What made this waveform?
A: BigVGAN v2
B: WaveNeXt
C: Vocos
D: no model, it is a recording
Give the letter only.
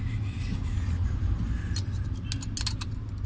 D